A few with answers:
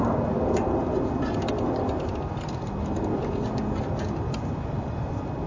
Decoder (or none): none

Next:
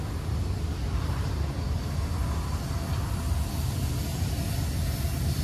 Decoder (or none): none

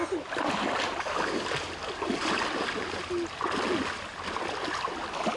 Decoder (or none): none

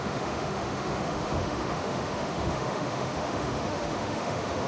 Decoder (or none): autoencoder, DAC-VAE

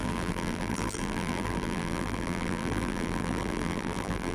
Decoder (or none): vocoder, BigVGAN v2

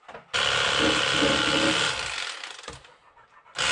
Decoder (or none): none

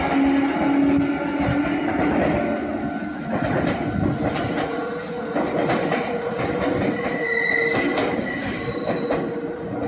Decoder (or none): none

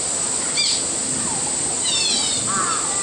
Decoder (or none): none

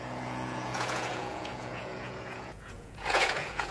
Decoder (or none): vocoder, Vocos